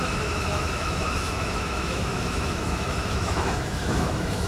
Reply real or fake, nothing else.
fake